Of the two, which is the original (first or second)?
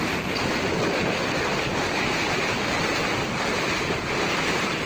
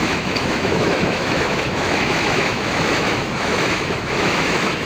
first